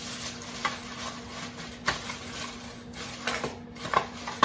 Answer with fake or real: real